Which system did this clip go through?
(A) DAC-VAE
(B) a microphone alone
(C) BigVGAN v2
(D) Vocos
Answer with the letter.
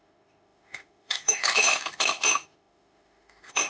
A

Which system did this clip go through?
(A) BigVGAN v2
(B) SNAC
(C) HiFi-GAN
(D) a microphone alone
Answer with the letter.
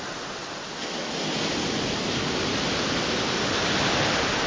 D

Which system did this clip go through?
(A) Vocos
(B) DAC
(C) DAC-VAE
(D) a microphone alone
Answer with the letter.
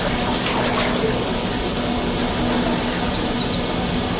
D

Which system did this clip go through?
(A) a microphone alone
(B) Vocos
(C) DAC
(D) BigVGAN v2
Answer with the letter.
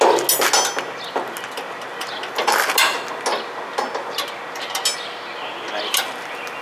A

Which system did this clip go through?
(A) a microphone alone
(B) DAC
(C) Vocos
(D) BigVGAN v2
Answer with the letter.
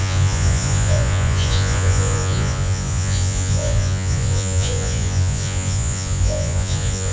C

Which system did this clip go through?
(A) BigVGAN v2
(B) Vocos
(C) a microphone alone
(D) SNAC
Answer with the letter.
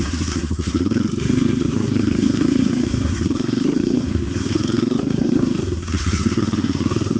D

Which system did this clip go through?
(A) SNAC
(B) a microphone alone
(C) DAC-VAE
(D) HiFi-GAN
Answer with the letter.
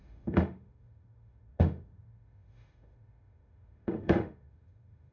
C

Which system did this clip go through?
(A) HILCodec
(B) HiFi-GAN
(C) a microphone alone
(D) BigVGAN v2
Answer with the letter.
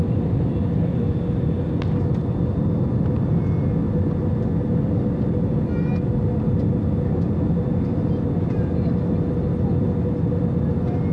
C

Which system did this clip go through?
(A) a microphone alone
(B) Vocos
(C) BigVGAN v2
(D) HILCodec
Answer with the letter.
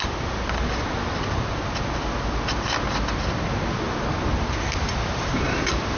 A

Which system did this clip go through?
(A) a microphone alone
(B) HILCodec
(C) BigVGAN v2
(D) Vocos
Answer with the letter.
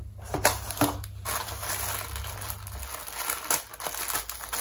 A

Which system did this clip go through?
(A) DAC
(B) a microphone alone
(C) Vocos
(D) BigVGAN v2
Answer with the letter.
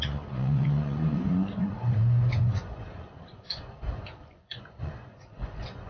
C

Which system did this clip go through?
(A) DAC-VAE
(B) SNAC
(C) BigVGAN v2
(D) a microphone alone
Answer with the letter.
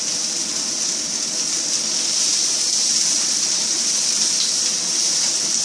D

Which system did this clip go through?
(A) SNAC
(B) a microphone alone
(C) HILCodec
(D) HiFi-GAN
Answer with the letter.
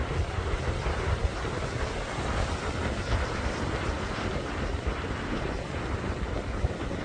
B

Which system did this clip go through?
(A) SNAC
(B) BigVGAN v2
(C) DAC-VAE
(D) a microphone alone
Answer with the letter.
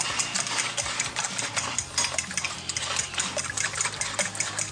B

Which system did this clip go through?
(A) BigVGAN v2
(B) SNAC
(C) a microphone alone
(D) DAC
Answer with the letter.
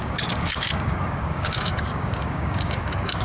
D